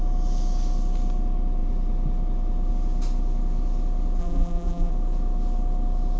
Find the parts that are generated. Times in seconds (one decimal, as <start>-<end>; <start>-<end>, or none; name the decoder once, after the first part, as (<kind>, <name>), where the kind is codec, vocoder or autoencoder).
4.2-4.9 (vocoder, BigVGAN v2)